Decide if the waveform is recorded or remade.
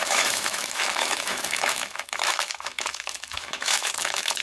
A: remade